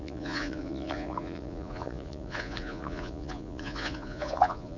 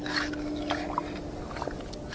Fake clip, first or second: first